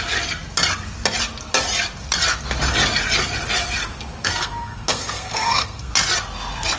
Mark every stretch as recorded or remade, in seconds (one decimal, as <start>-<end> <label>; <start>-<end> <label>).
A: 0.0-4.2 recorded; 4.2-5.9 remade; 5.9-6.8 recorded